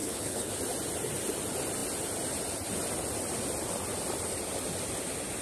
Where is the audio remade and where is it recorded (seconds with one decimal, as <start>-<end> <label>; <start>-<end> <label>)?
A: 0.0-0.5 remade; 0.5-5.4 recorded